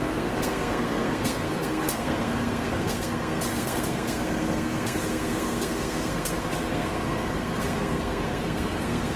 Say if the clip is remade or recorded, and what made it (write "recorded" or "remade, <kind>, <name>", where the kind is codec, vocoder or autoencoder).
remade, codec, SNAC